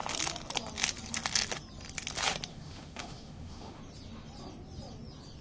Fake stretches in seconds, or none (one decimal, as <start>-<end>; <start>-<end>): 2.5-3.8